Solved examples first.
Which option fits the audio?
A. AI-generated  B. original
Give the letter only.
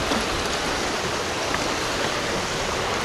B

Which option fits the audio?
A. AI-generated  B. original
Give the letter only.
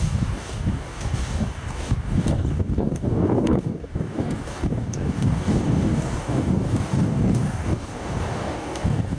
A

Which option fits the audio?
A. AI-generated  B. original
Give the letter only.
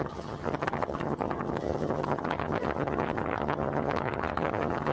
A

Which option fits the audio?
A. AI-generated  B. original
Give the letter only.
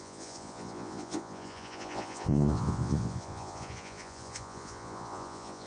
A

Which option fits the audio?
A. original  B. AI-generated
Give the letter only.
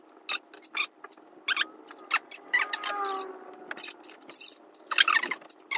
A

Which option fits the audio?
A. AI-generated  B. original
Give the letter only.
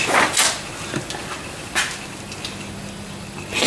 B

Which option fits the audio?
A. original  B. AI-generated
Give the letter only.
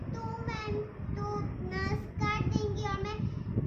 A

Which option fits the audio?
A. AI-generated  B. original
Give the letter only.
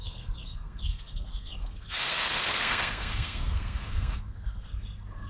A